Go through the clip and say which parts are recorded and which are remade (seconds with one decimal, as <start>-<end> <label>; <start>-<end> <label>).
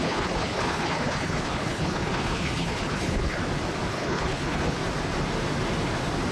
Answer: 0.0-3.4 remade; 3.4-3.9 recorded; 3.9-4.8 remade; 4.8-6.3 recorded